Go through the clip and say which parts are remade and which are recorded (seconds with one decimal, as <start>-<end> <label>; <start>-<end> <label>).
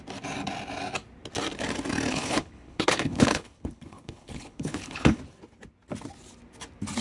0.0-2.1 recorded; 2.1-5.2 remade; 5.2-7.0 recorded